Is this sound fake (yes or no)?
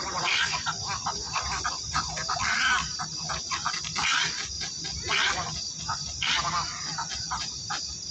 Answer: no